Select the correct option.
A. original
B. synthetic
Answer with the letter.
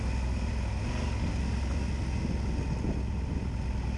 A